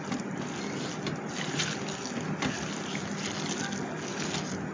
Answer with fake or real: real